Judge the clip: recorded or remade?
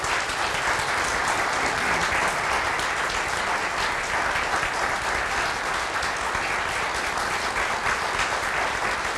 recorded